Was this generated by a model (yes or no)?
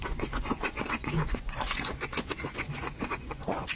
yes